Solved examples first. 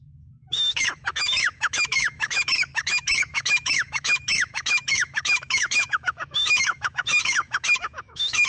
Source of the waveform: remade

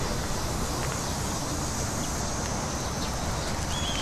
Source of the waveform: recorded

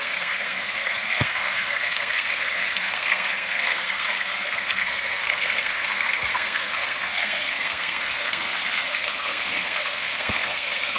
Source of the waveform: remade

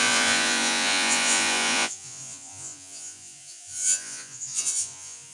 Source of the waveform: remade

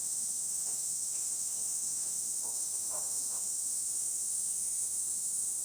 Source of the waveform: remade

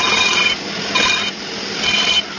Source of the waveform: recorded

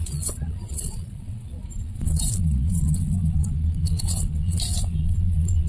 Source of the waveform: remade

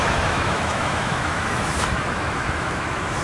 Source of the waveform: remade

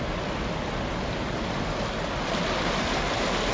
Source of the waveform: recorded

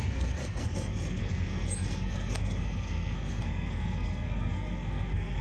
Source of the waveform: remade